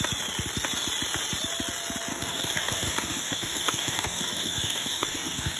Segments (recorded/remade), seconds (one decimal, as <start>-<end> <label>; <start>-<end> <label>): 0.0-2.1 recorded; 2.1-5.6 remade